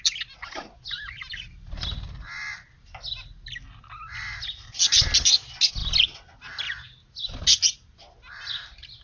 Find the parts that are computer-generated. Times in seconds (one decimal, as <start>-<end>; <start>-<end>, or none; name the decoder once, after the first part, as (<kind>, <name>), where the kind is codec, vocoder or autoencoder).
none